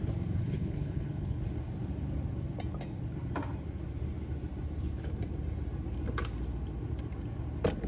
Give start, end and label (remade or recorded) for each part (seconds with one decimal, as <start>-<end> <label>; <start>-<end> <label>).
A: 0.0-0.4 recorded; 0.4-1.4 remade; 1.4-7.9 recorded